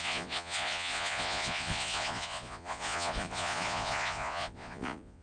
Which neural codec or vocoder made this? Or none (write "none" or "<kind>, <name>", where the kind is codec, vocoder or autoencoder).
vocoder, Vocos